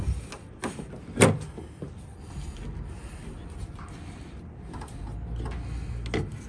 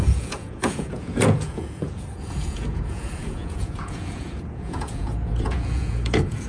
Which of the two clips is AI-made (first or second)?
second